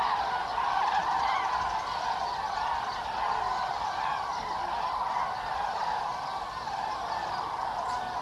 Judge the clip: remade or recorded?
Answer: recorded